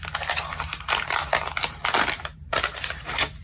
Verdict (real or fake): real